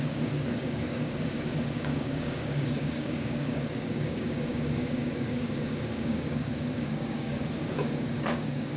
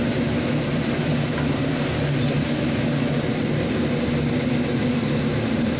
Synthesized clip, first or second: first